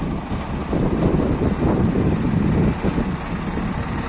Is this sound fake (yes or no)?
no